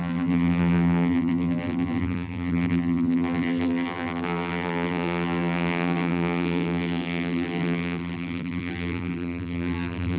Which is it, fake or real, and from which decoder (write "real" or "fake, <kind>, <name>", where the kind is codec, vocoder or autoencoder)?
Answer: fake, vocoder, BigVGAN v2